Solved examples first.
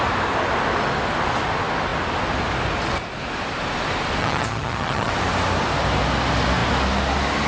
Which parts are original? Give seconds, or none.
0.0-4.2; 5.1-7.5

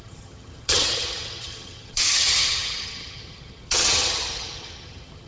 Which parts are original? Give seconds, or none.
none

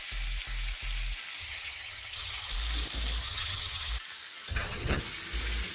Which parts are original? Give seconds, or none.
0.0-1.4; 2.5-3.2; 3.9-4.5; 5.0-5.7

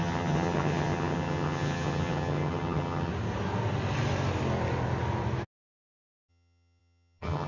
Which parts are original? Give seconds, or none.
3.1-6.3

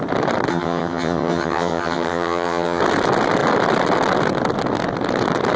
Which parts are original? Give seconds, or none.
0.0-0.5; 2.8-5.6

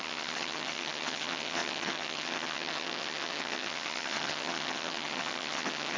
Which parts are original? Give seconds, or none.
none

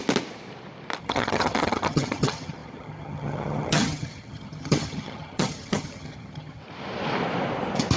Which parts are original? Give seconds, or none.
0.0-1.0; 6.6-8.0

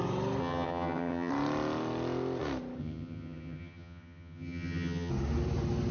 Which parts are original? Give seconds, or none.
0.0-0.4; 1.3-2.8; 5.1-5.9